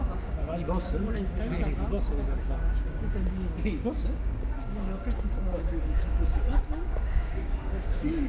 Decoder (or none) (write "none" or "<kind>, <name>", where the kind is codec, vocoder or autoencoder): codec, DAC